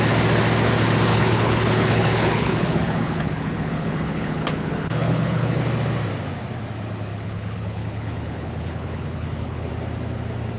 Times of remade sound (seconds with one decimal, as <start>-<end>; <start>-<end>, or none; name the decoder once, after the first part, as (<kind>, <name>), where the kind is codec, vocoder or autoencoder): 1.1-5.6 (codec, HILCodec); 7.1-9.7